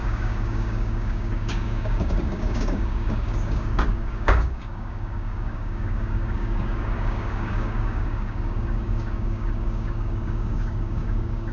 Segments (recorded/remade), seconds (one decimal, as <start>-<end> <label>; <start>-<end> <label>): 0.0-11.5 remade